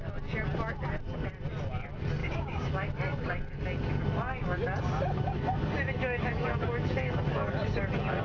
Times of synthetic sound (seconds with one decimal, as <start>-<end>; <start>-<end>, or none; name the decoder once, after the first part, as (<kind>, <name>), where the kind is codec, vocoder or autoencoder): 2.2-2.7 (codec, DAC)